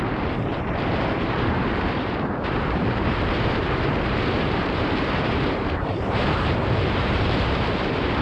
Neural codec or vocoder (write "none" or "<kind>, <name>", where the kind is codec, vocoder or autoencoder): vocoder, BigVGAN v2